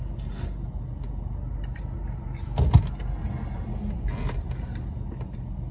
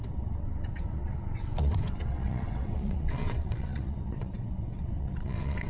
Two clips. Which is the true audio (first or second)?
first